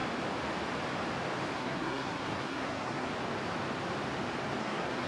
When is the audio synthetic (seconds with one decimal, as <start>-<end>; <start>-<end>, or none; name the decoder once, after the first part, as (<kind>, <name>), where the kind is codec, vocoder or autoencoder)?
1.5-3.1 (codec, SNAC); 4.6-5.1